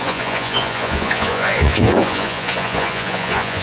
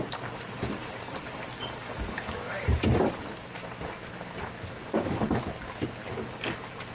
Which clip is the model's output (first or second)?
first